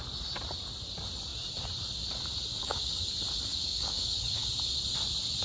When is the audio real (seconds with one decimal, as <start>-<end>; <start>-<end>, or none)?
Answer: 0.0-2.5; 3.1-3.5; 4.5-5.4